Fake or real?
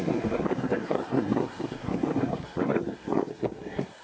fake